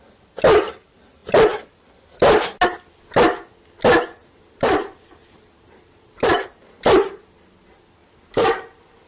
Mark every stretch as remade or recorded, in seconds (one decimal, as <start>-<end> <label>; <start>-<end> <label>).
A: 0.0-4.2 recorded; 4.2-6.3 remade; 6.3-8.0 recorded; 8.0-9.1 remade